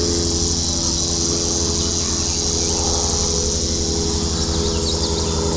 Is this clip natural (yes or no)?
yes